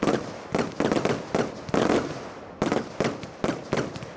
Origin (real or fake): real